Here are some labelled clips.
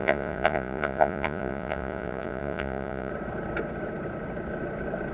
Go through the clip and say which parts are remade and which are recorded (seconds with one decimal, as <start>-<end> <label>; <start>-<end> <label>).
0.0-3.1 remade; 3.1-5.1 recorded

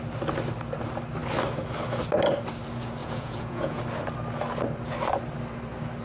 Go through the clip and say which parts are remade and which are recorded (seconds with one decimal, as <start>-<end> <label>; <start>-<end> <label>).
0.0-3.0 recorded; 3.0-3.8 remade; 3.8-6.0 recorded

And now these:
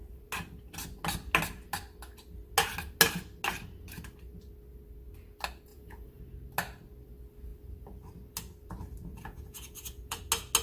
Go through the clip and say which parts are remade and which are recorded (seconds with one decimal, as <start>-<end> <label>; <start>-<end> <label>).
0.0-5.7 recorded; 5.7-6.2 remade; 6.2-9.1 recorded; 9.1-10.2 remade; 10.2-10.6 recorded